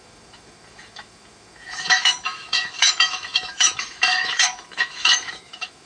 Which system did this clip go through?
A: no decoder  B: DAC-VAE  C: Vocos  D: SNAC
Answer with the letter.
B